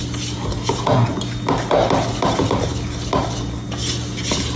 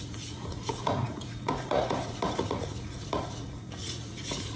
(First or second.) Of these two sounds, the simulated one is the second